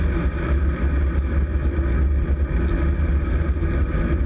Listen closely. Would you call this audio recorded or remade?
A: recorded